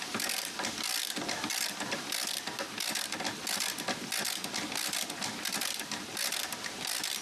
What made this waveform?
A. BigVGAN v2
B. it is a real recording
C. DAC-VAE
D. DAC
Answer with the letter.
B